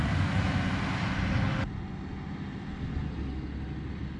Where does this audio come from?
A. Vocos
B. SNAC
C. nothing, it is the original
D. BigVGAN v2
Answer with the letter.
C